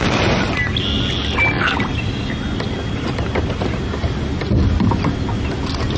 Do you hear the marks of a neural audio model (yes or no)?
no